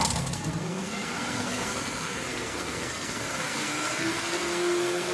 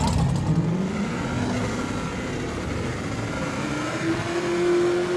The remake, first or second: first